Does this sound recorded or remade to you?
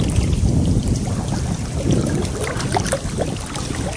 recorded